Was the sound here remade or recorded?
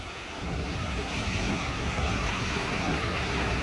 remade